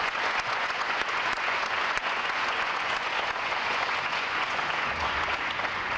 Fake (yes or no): yes